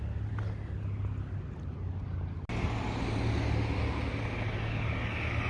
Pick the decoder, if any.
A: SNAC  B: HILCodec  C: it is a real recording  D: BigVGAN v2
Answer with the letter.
C